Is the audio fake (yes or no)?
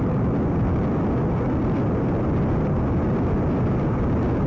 no